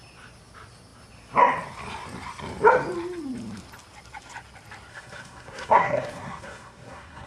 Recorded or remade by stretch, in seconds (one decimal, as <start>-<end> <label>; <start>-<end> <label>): 0.0-4.9 recorded; 4.9-7.3 remade